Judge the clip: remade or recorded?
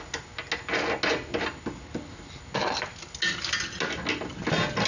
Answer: recorded